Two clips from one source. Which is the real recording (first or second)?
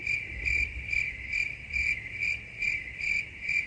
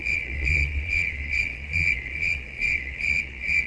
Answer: first